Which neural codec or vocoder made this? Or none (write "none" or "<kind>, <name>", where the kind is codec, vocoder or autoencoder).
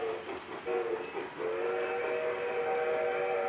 none